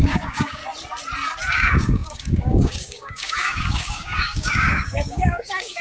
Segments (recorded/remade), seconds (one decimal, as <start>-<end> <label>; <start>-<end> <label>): 0.0-0.6 remade; 0.6-1.5 recorded; 1.5-5.8 remade